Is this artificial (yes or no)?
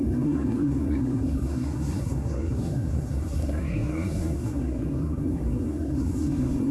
yes